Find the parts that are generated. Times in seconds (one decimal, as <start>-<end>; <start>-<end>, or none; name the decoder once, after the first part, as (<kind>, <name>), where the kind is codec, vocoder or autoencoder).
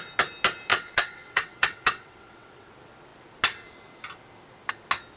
0.7-2.7 (vocoder, WaveNeXt)